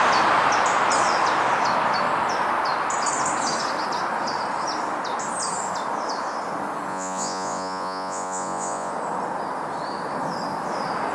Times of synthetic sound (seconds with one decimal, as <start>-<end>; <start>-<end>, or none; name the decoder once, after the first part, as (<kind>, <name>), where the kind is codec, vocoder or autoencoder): 6.9-8.9 (vocoder, Vocos)